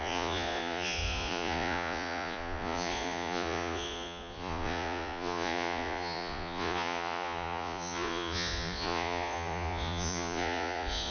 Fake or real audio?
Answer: fake